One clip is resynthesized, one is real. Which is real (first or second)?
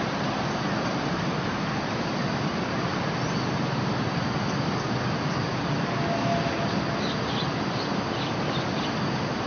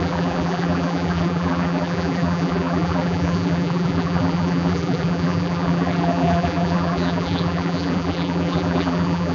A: first